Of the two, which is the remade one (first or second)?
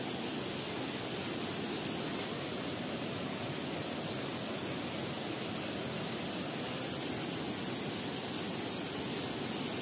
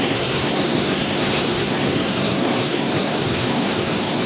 second